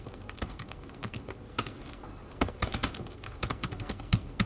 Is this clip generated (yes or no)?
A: yes